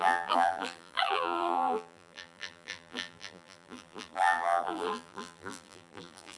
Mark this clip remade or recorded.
remade